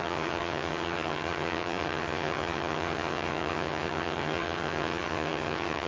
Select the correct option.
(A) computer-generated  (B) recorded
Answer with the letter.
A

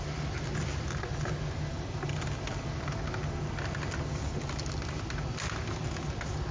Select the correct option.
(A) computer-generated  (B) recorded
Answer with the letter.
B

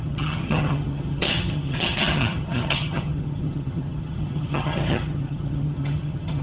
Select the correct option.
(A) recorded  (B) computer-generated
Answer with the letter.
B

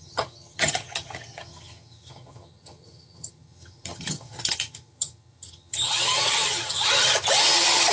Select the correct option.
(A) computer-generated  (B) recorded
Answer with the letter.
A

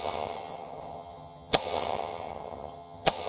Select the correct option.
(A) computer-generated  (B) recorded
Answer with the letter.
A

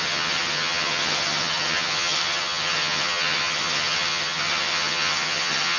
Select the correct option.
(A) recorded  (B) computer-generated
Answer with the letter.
B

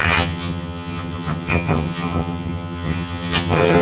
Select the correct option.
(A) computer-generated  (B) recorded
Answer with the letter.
A